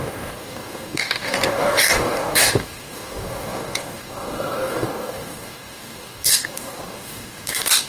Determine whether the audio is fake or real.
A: fake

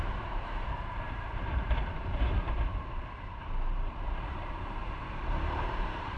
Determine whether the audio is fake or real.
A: fake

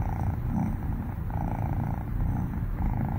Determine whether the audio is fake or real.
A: real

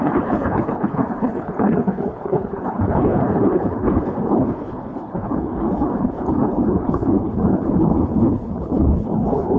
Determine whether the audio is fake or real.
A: fake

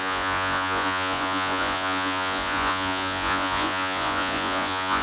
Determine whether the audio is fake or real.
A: fake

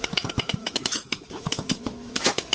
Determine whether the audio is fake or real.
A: fake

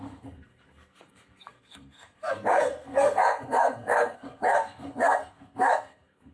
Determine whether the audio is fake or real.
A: fake